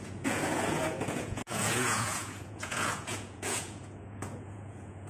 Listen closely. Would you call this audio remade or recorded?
remade